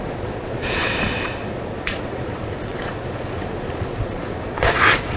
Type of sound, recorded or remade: remade